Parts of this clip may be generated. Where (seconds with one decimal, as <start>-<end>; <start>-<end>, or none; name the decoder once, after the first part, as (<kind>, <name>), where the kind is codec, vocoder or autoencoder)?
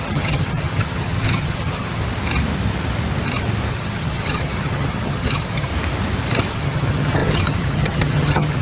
0.0-2.0 (vocoder, HiFi-GAN); 3.7-5.7; 6.5-8.6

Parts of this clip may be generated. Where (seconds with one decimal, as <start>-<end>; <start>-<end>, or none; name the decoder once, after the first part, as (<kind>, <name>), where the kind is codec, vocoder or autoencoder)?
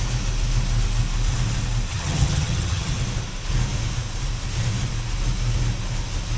1.9-2.9 (vocoder, HiFi-GAN)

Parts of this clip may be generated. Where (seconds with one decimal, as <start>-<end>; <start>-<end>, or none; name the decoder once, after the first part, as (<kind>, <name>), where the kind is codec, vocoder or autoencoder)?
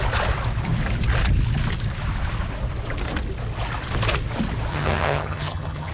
4.7-5.9 (vocoder, HiFi-GAN)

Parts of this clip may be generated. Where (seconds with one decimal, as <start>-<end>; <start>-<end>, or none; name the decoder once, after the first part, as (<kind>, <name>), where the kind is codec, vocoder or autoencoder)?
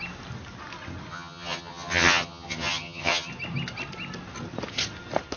1.1-3.3 (vocoder, HiFi-GAN)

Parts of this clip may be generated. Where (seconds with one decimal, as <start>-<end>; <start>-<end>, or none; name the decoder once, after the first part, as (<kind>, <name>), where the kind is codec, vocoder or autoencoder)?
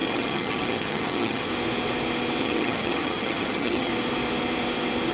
0.0-1.5 (vocoder, HiFi-GAN); 2.4-3.9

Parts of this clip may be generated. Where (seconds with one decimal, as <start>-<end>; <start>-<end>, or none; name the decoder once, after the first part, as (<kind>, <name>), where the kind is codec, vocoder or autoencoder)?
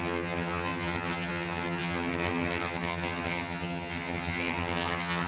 0.0-5.3 (vocoder, HiFi-GAN)